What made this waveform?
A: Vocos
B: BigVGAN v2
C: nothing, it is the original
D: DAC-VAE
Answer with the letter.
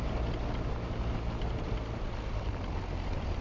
C